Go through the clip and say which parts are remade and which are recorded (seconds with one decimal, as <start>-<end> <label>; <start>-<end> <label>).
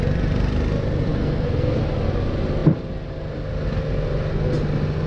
0.0-1.1 recorded; 1.1-1.8 remade; 1.8-5.1 recorded